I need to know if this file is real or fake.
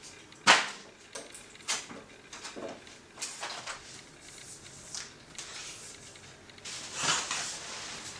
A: real